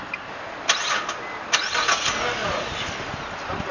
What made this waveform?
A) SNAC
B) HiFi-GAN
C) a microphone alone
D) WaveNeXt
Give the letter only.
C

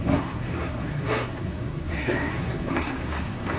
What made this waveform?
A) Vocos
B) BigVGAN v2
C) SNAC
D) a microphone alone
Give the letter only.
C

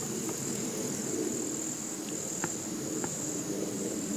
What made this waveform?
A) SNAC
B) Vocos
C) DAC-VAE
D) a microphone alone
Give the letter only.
D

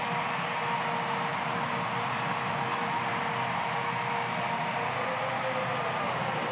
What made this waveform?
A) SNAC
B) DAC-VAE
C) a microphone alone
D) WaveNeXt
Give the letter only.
C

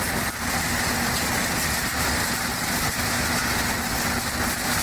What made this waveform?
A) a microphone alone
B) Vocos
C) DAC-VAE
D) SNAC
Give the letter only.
A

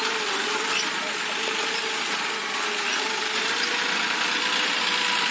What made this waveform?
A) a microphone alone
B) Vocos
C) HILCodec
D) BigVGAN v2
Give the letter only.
A